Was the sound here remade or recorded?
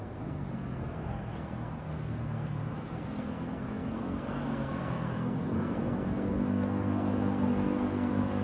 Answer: remade